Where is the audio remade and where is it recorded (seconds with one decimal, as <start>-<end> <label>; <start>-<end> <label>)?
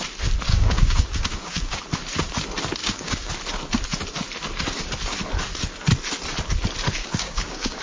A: 0.0-0.5 recorded; 0.5-1.8 remade; 1.8-2.8 recorded; 2.8-3.3 remade; 3.3-7.0 recorded; 7.0-7.8 remade